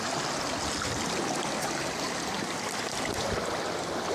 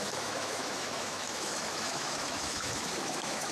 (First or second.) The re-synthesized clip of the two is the second